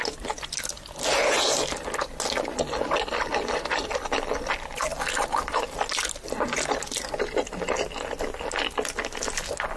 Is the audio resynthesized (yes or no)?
no